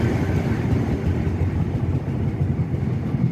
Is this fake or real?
real